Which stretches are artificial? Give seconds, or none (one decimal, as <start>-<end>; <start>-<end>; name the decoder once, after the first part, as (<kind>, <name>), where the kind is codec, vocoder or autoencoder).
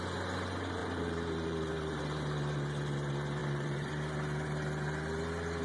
0.8-2.0 (vocoder, BigVGAN v2); 3.4-3.9